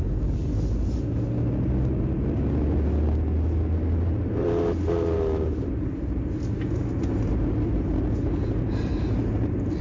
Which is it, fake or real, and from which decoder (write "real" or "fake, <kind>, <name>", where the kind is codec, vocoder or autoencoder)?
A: real